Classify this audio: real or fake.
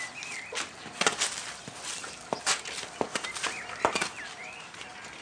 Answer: real